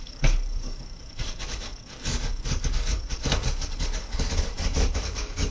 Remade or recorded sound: remade